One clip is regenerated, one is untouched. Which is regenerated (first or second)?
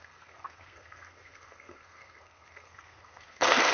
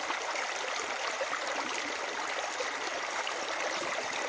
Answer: first